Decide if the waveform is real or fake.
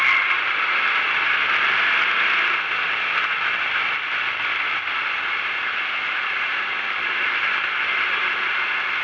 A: real